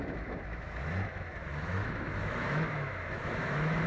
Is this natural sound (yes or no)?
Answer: no